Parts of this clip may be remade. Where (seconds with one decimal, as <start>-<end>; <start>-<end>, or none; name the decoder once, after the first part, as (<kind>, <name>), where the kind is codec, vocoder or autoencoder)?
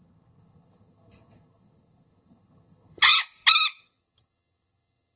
0.0-3.2 (vocoder, HiFi-GAN); 3.8-5.2